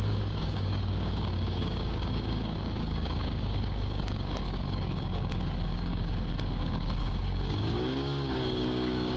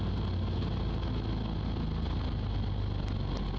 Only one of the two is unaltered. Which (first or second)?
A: second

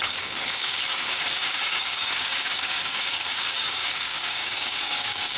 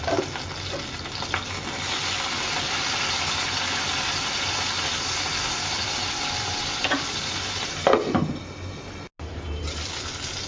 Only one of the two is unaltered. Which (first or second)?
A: second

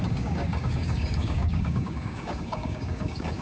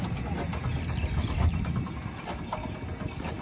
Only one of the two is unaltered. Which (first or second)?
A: second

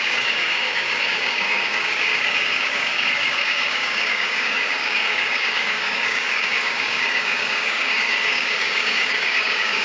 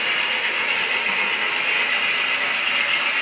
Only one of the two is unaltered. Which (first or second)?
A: second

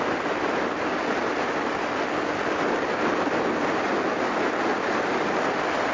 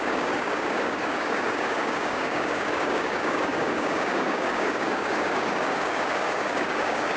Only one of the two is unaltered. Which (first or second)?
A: first